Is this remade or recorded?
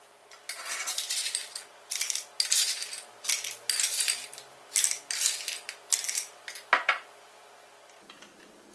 recorded